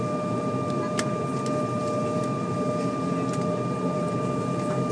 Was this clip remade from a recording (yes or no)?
yes